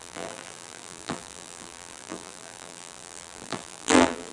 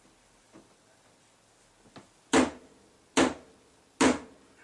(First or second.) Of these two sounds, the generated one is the first